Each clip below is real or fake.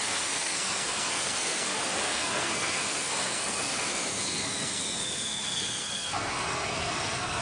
fake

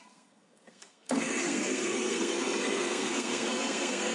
fake